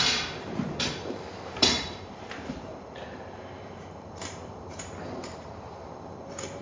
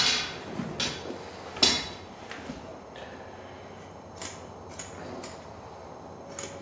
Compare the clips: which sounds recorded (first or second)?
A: second